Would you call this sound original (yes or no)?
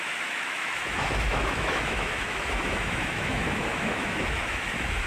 no